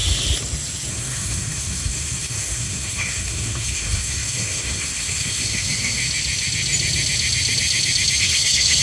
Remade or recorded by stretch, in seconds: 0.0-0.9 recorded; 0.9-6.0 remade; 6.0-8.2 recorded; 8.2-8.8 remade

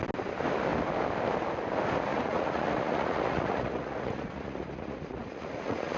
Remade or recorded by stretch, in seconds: 0.0-2.1 recorded; 2.1-6.0 remade